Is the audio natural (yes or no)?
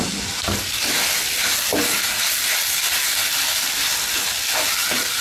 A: yes